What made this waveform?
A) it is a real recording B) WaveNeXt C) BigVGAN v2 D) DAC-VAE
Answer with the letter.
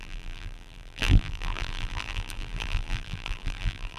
C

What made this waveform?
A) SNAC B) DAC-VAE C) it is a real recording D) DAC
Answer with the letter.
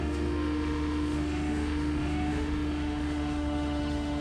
B